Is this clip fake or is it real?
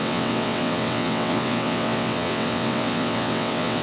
fake